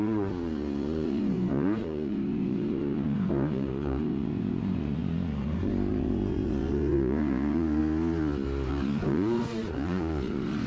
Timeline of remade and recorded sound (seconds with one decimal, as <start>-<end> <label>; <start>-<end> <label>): 0.0-7.8 remade; 7.8-8.7 recorded; 8.7-10.7 remade